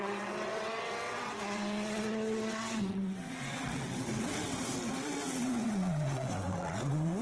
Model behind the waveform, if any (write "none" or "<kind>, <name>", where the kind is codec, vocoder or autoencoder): vocoder, WaveNeXt